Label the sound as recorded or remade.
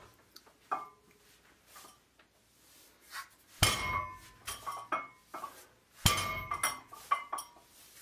recorded